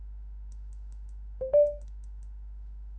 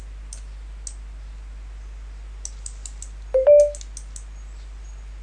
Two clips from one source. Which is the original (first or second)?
second